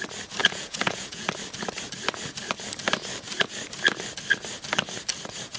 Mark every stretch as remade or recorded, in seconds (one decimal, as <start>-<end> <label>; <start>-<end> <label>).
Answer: 0.0-0.4 recorded; 0.4-1.3 remade; 1.3-5.6 recorded